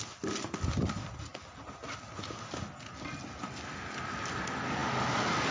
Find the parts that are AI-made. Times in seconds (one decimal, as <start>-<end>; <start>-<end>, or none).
none